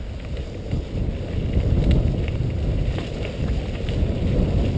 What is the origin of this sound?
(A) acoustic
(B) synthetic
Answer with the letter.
A